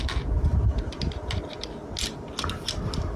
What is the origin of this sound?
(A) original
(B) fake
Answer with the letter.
A